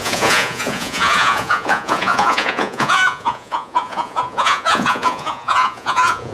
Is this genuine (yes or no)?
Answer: no